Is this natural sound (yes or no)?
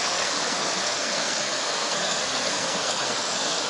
no